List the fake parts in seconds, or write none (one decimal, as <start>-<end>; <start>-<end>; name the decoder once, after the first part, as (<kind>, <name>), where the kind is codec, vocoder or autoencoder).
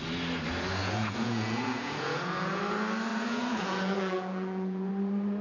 0.8-2.6 (vocoder, Vocos); 3.1-4.9